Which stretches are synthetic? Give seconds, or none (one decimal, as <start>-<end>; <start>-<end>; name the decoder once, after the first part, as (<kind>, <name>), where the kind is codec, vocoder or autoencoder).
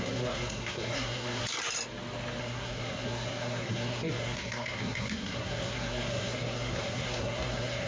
0.0-1.4 (codec, SNAC); 2.4-7.9